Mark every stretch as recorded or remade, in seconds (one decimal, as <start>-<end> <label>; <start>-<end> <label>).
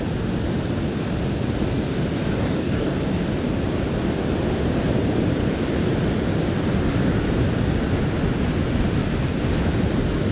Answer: 0.0-2.4 recorded; 2.4-2.9 remade; 2.9-10.3 recorded